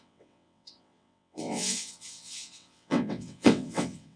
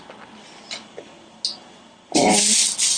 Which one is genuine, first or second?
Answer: second